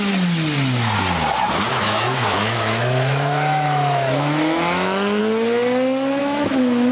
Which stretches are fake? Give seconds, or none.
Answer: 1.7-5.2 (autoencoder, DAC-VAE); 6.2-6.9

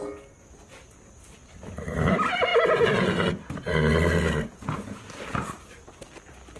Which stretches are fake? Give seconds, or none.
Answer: none